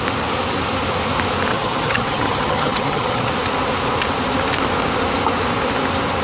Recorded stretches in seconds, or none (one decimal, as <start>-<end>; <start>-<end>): 0.0-1.5; 3.3-6.2